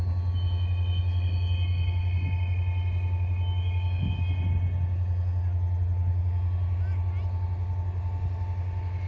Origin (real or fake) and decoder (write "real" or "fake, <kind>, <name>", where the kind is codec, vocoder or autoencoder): real